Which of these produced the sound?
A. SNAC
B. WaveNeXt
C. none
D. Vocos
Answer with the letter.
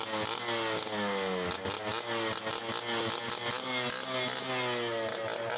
C